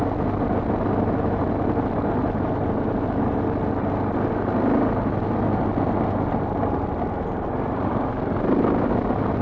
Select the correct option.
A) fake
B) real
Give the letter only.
B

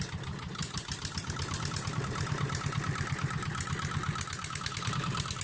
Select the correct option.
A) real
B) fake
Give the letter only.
A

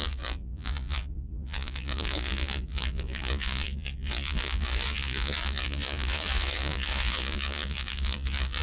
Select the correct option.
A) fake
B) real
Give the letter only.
A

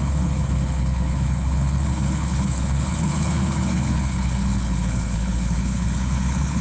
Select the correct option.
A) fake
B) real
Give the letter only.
A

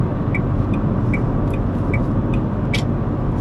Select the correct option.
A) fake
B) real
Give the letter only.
B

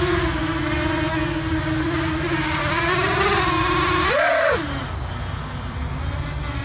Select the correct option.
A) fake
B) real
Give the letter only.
B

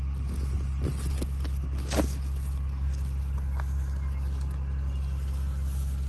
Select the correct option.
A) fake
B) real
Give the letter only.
B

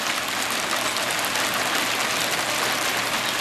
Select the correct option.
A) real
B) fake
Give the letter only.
A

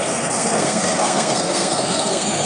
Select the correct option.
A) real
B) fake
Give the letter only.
B